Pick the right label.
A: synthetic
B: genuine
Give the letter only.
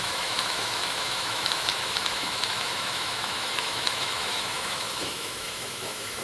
A